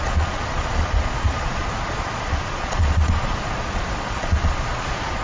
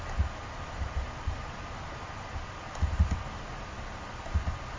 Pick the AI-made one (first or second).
first